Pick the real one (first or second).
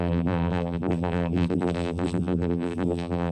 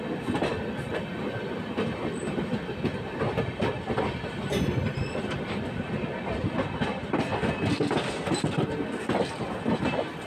second